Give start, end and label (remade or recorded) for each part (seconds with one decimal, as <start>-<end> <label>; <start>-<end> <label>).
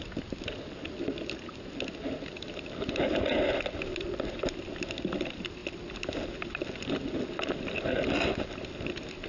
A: 0.0-9.3 recorded